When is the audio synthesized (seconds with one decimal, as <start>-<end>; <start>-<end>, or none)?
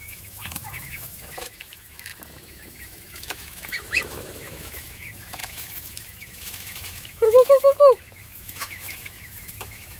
0.0-10.0